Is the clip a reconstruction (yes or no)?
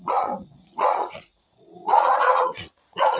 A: yes